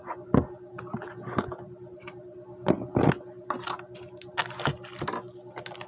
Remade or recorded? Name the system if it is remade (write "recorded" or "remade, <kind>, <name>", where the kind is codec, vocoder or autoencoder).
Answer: recorded